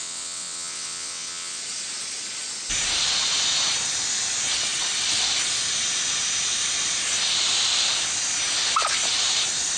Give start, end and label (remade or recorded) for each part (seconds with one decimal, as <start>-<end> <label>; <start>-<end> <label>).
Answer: 0.0-1.6 remade; 1.6-9.8 recorded